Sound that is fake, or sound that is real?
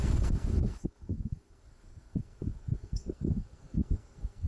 fake